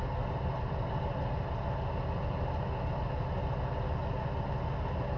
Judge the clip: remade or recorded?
recorded